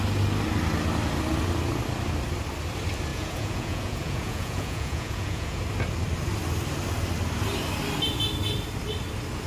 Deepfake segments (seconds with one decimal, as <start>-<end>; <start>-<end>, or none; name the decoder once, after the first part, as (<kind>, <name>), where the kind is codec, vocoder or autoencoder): 3.1-5.6 (vocoder, Vocos)